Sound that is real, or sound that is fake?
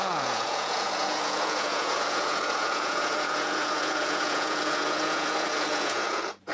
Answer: fake